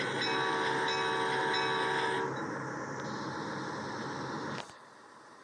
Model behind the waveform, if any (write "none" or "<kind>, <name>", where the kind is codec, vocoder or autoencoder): none